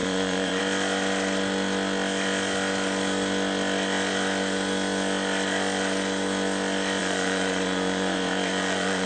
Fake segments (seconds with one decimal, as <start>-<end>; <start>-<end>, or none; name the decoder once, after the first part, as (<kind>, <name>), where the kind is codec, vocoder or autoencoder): 0.0-0.6 (vocoder, Vocos); 7.0-9.1